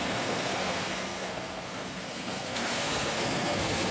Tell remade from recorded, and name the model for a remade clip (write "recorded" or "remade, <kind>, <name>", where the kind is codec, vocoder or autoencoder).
remade, codec, SNAC